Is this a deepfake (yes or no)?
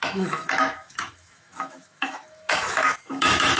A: yes